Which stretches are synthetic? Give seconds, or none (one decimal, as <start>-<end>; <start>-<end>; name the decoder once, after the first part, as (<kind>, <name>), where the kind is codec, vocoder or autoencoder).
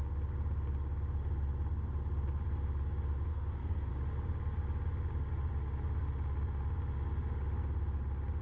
3.3-3.9 (codec, SNAC)